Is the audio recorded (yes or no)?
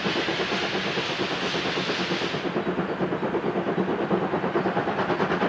yes